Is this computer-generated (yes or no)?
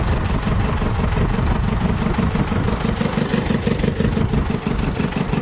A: no